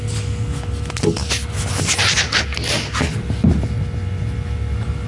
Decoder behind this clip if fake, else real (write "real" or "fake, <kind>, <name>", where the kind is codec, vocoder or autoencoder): real